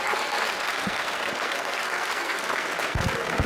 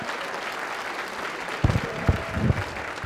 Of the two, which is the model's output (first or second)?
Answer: first